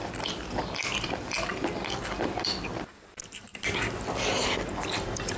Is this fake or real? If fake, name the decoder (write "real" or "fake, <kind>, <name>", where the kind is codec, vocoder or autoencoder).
real